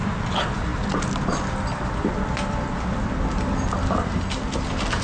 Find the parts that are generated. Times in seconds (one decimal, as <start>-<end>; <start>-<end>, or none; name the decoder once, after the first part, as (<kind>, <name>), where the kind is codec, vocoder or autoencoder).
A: none